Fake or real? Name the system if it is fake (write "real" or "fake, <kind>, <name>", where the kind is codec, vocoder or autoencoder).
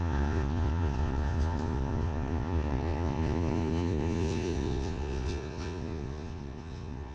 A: fake, vocoder, Vocos